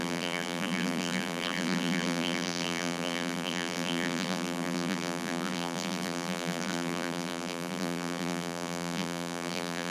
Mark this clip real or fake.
fake